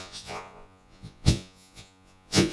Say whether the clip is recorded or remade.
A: remade